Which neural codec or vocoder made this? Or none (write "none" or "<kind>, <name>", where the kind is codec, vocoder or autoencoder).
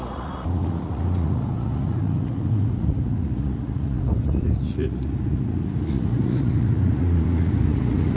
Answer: vocoder, Vocos